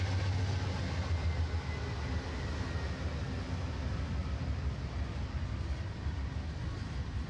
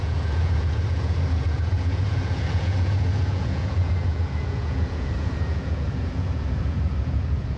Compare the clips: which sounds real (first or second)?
first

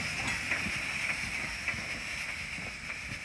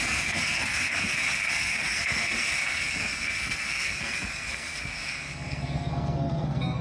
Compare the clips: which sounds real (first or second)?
first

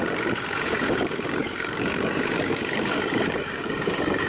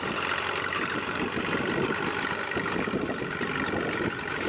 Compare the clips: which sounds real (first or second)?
second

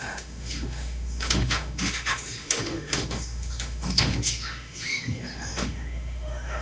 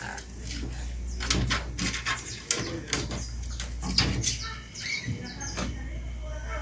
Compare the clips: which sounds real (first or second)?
second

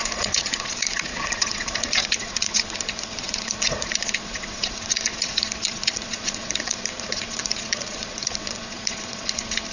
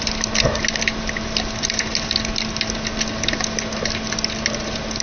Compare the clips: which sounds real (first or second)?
second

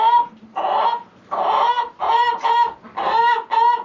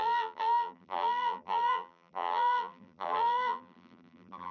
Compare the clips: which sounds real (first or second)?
first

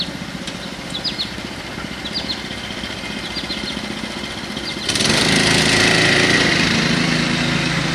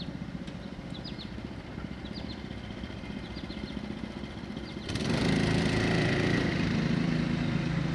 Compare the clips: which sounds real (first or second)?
first